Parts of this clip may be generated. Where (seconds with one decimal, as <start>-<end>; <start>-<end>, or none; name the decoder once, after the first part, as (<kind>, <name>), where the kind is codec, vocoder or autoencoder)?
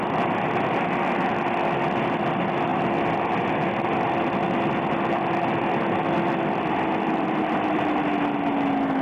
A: none